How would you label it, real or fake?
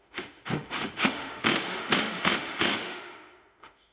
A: fake